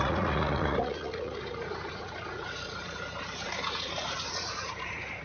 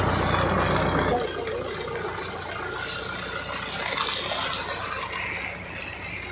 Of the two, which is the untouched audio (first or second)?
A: second